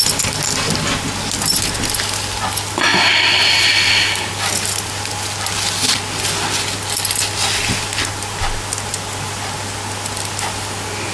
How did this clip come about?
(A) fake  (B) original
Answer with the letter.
B